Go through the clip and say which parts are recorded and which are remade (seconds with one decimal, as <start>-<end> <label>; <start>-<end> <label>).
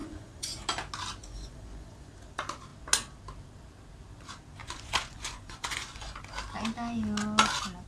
0.0-0.6 remade; 0.6-1.2 recorded; 1.2-2.1 remade; 2.1-4.6 recorded; 4.6-6.2 remade; 6.2-7.9 recorded